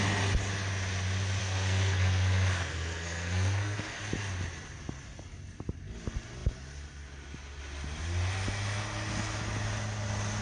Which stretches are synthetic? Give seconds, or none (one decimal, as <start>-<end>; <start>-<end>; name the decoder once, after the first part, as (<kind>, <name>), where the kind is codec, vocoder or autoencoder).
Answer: 1.4-4.0 (codec, SNAC)